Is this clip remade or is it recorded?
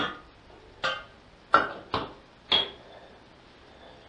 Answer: recorded